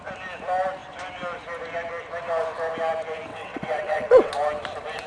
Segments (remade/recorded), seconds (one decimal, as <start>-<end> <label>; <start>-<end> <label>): 0.0-3.3 recorded; 3.3-4.3 remade; 4.3-5.1 recorded